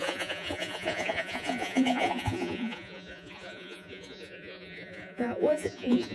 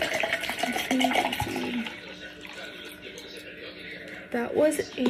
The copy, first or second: first